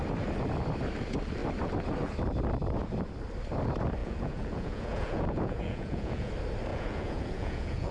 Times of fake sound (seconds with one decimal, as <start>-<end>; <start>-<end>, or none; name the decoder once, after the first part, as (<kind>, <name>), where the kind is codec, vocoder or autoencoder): 4.0-6.3 (vocoder, Vocos); 6.7-7.9